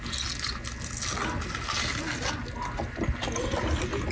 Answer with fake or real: real